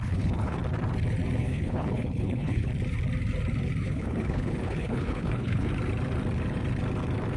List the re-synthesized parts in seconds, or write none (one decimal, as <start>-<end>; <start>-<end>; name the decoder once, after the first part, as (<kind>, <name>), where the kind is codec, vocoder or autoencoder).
0.0-0.6 (codec, HILCodec); 1.4-2.7; 3.8-5.7